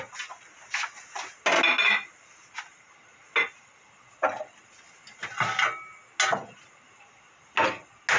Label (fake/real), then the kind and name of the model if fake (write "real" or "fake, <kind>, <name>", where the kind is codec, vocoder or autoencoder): real